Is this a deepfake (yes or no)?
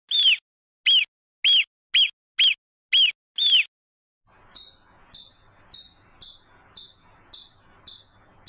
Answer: no